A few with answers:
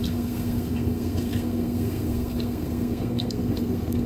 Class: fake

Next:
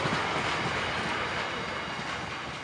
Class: real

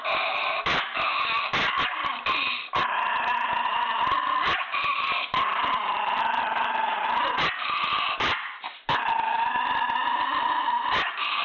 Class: real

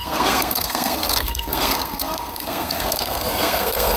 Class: fake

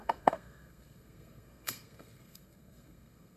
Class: fake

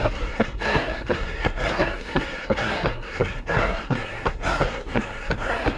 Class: fake